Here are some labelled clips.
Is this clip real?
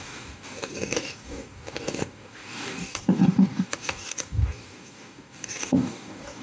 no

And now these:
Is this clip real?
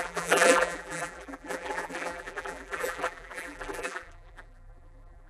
no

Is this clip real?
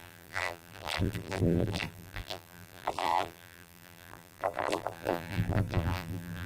no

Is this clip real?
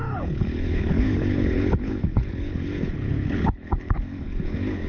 no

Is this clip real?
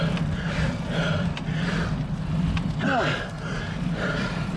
yes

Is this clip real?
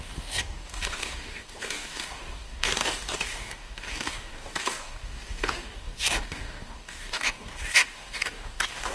no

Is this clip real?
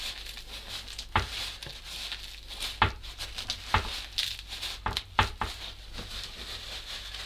yes